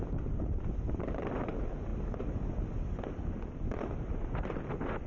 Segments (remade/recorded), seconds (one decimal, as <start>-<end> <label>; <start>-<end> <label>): 0.0-1.9 remade; 1.9-3.3 recorded; 3.3-5.1 remade